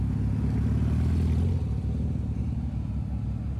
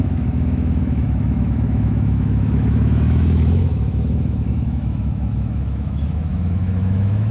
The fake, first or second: second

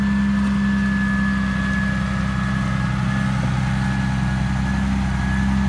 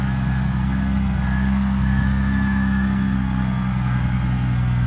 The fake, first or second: second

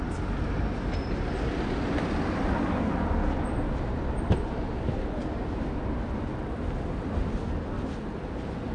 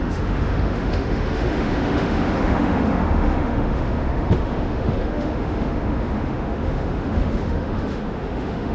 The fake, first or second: second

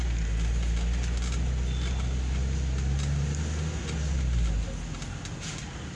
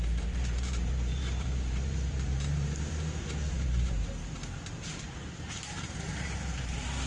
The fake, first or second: second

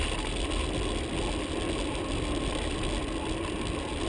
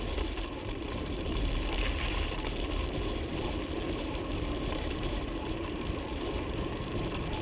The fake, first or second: second